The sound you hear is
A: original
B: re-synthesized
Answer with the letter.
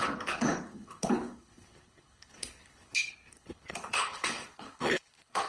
B